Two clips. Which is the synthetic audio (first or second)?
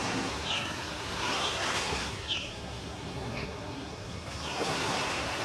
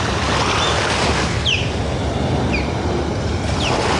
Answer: first